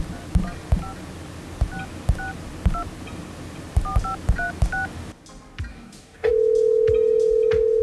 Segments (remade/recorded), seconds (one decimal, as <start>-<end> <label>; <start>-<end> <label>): 0.0-5.7 recorded; 5.7-6.3 remade; 6.3-7.8 recorded